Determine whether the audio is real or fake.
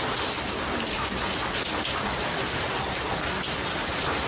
real